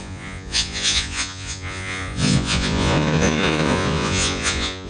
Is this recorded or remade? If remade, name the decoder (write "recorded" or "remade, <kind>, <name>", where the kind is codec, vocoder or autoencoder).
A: remade, vocoder, Vocos